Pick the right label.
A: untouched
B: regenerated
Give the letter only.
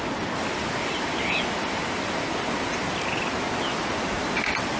A